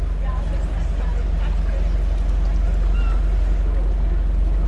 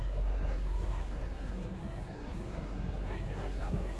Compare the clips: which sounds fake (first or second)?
second